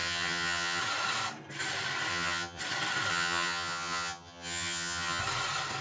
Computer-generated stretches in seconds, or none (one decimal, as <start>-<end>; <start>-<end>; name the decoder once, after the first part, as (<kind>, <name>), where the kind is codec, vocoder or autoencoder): 0.0-0.8 (vocoder, HiFi-GAN); 2.1-2.6; 3.1-5.2